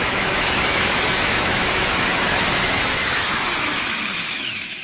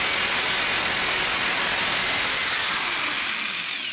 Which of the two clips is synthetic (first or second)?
first